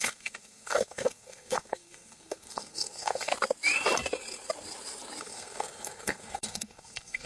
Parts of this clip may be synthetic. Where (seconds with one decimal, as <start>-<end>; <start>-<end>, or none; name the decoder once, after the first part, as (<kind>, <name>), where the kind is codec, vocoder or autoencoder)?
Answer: 0.0-3.3 (codec, SNAC); 5.2-7.3